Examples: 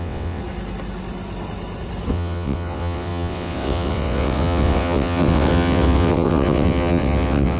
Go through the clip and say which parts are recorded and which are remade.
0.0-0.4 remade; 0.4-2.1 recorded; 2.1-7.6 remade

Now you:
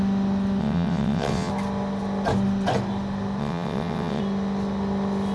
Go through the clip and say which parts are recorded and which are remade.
0.0-0.6 recorded; 0.6-1.5 remade; 1.5-3.4 recorded; 3.4-4.2 remade; 4.2-5.3 recorded